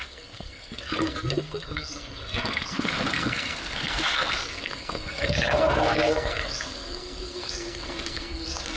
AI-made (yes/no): yes